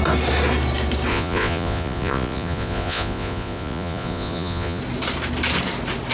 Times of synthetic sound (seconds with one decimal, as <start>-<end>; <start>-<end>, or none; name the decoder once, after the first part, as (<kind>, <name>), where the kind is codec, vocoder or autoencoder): 1.1-4.8 (vocoder, Vocos)